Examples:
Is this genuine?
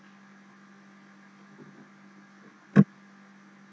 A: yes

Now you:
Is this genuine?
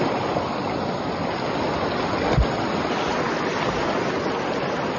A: yes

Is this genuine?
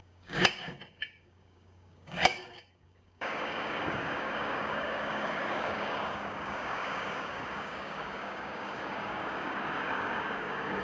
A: no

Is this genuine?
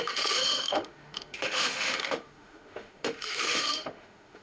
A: no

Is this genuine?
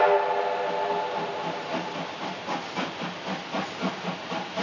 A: yes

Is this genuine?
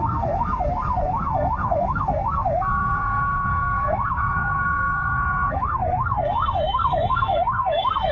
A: no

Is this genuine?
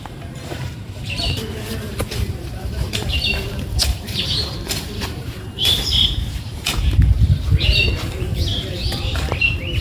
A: no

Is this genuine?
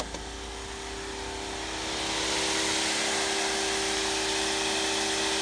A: yes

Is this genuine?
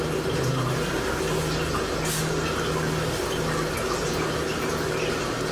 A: yes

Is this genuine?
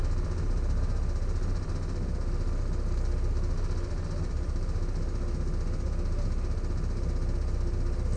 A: yes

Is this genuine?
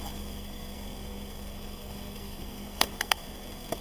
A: no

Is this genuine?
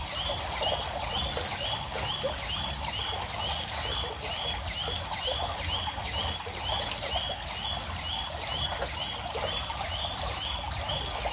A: yes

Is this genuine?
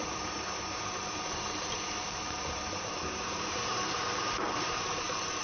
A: no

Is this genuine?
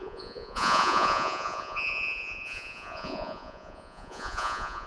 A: no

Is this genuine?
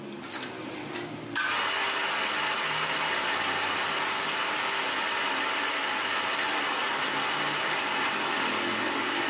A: yes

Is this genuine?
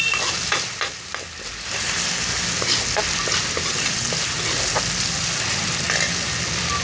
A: yes